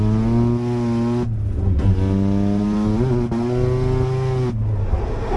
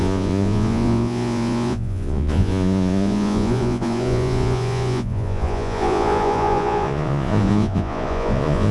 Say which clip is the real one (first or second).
first